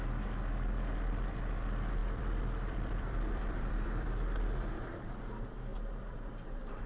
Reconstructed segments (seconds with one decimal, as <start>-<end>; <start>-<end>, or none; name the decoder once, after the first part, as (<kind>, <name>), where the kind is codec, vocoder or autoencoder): 2.0-5.3 (vocoder, BigVGAN v2); 5.7-6.3